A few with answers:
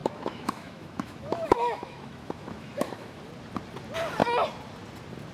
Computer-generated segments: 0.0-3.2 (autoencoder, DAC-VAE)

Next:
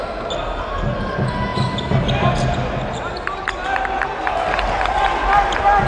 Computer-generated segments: none

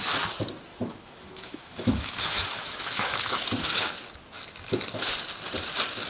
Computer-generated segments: 0.7-3.9 (autoencoder, DAC-VAE)

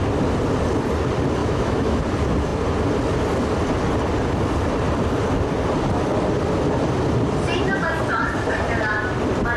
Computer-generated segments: 1.4-2.0 (autoencoder, DAC-VAE)

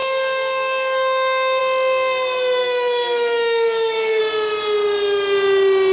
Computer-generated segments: 0.0-1.6 (autoencoder, DAC-VAE); 2.6-4.2

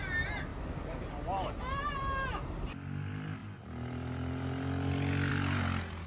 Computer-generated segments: none

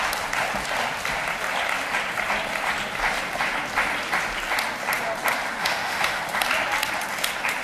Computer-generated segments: 5.6-6.2 (autoencoder, DAC-VAE)